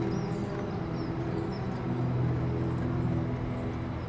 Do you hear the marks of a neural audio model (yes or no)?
no